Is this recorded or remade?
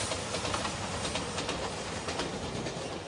recorded